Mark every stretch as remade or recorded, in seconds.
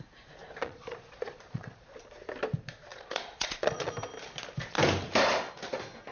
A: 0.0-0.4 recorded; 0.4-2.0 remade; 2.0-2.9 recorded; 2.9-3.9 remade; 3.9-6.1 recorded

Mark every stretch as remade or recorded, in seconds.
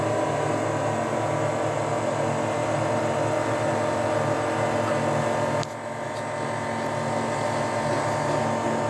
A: 0.0-8.9 recorded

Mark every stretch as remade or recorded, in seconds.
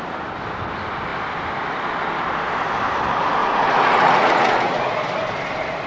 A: 0.0-3.4 recorded; 3.4-4.9 remade; 4.9-5.9 recorded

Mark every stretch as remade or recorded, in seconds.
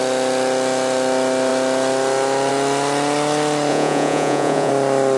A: 0.0-3.7 recorded; 3.7-4.7 remade; 4.7-5.2 recorded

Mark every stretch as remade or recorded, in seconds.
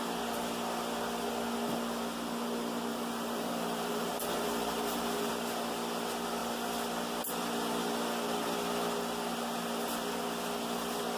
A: 0.0-2.9 recorded; 2.9-5.3 remade; 5.3-11.2 recorded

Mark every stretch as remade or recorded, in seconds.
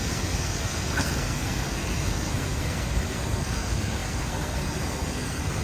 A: 0.0-5.6 remade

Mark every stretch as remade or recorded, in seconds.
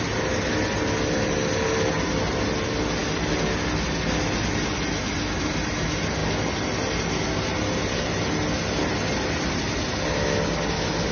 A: 0.0-11.1 recorded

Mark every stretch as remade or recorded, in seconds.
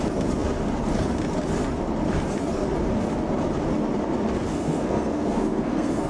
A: 0.0-4.5 recorded; 4.5-6.1 remade